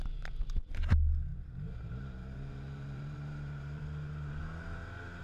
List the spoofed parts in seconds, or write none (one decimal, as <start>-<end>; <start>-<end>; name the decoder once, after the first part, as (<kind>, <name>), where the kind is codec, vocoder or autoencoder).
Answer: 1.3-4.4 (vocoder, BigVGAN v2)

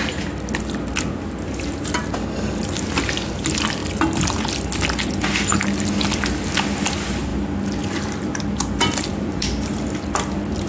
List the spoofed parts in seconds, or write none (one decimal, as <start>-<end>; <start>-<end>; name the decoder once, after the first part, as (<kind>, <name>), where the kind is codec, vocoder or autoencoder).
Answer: 9.1-9.7 (vocoder, BigVGAN v2)

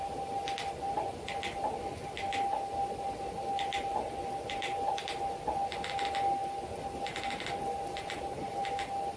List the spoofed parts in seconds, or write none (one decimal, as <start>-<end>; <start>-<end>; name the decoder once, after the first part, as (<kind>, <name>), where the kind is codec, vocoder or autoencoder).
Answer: 6.4-9.2 (vocoder, BigVGAN v2)

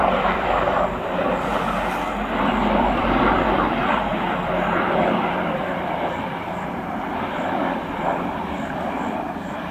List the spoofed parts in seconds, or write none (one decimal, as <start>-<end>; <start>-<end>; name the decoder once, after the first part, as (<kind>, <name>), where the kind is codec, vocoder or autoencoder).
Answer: 0.0-1.5 (vocoder, BigVGAN v2); 2.4-9.7

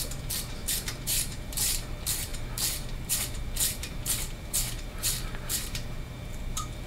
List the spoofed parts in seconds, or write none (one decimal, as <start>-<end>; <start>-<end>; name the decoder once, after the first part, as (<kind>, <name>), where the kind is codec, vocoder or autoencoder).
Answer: 0.0-6.9 (vocoder, BigVGAN v2)